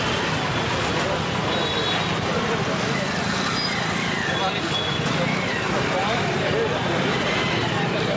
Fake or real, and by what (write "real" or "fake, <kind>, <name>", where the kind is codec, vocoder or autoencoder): real